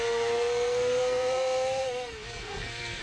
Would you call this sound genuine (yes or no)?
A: no